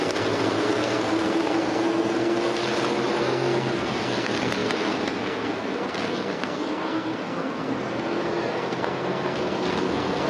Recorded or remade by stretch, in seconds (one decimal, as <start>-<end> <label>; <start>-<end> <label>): 0.0-2.6 remade; 2.6-3.2 recorded; 3.2-10.3 remade